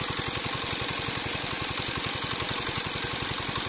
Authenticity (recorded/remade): recorded